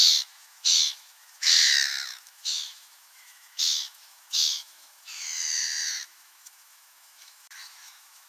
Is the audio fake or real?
fake